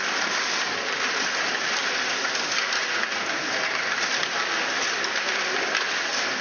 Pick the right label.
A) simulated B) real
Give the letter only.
B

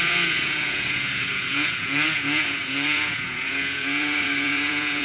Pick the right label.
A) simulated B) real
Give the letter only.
A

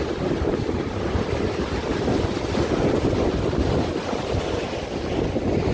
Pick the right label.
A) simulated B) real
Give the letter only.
B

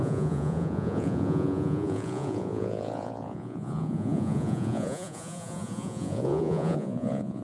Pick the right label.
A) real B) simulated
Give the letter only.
B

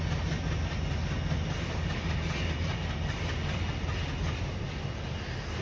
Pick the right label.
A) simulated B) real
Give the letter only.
B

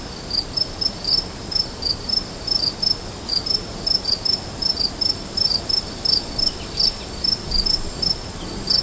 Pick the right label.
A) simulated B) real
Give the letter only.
B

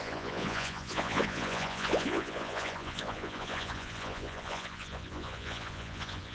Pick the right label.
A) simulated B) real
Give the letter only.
A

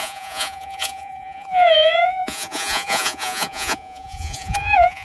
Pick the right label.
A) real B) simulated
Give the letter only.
B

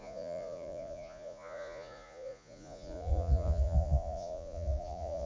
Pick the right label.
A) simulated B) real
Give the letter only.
A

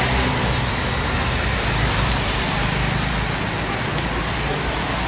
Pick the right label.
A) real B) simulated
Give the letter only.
A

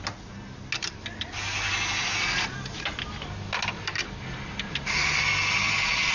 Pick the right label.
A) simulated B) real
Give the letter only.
B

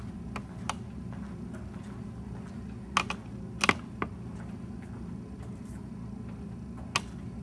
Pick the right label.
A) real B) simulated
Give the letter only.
A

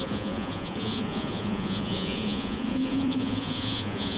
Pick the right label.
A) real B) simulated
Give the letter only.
B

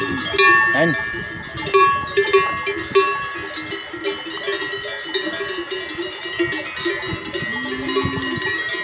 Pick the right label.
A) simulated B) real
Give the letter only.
B